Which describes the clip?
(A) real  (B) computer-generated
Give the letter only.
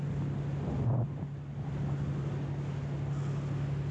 A